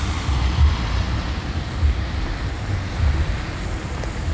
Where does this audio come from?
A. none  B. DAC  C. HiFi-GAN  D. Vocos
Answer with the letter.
A